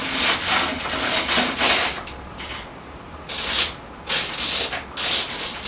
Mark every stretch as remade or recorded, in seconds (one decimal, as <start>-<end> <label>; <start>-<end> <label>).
0.0-3.1 recorded; 3.1-3.9 remade; 3.9-5.7 recorded